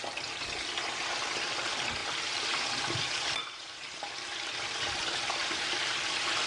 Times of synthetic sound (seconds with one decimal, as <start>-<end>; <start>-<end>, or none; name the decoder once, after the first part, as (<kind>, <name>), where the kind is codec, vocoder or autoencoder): 2.0-5.8 (vocoder, BigVGAN v2)